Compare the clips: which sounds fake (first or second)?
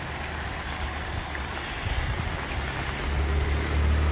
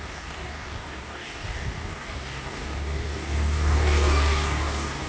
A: second